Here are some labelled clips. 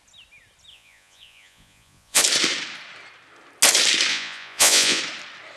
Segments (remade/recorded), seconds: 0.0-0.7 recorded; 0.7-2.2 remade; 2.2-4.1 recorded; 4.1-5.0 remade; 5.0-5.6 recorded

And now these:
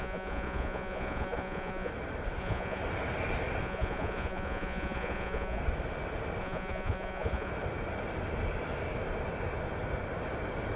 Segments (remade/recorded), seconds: 0.0-1.9 remade; 1.9-2.4 recorded; 2.4-2.8 remade; 2.8-3.6 recorded; 3.6-5.6 remade; 5.6-6.4 recorded; 6.4-7.5 remade; 7.5-10.8 recorded

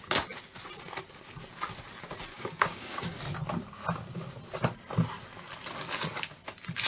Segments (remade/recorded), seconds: 0.0-2.3 recorded; 2.3-3.2 remade; 3.2-6.9 recorded

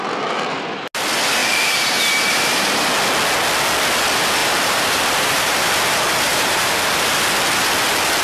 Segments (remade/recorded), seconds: 0.0-1.4 recorded; 1.4-2.8 remade; 2.8-4.4 recorded; 4.4-5.7 remade; 5.7-6.3 recorded; 6.3-7.1 remade; 7.1-8.2 recorded

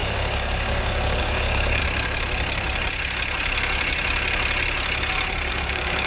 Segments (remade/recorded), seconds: 0.0-1.8 remade; 1.8-5.5 recorded; 5.5-6.1 remade